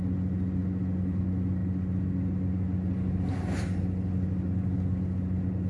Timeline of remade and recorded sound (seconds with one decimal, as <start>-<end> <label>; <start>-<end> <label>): 0.0-5.7 recorded

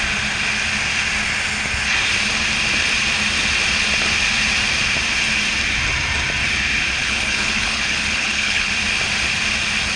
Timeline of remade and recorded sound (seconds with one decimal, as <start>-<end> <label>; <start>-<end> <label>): 0.0-7.0 recorded; 7.0-8.7 remade; 8.7-10.0 recorded